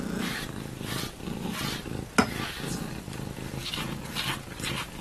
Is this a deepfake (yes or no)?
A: no